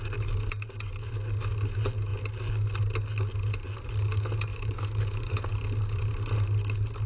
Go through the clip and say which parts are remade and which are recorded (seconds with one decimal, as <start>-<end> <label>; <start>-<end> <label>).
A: 0.0-4.5 recorded; 4.5-5.4 remade; 5.4-7.1 recorded